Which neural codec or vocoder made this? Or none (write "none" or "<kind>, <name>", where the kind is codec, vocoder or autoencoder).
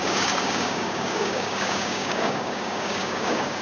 codec, DAC